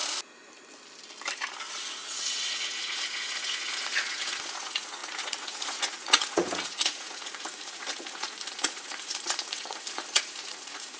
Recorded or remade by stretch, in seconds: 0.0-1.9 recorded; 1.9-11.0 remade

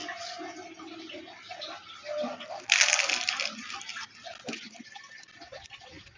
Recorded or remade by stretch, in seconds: 0.0-6.2 recorded

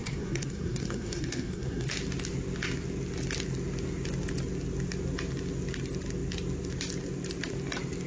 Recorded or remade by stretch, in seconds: 0.0-1.9 remade; 1.9-8.1 recorded